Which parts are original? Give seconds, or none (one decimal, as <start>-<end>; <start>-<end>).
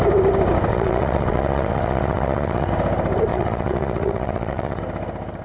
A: 0.0-0.7; 2.7-3.3; 4.8-5.4